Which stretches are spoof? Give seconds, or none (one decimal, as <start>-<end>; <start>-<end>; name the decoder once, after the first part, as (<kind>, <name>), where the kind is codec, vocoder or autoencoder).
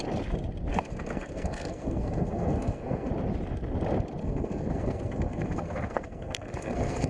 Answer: 0.7-3.1 (codec, SNAC); 4.2-7.1